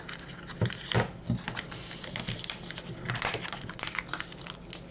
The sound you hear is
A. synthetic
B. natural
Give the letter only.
B